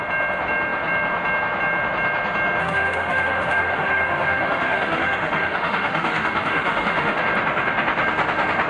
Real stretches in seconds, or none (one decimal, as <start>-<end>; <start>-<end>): 0.0-2.6; 7.2-8.7